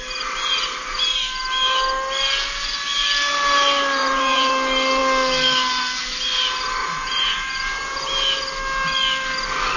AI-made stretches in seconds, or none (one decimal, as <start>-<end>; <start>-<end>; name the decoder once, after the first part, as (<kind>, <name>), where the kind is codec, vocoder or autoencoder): 4.0-4.5 (vocoder, Vocos); 6.8-8.0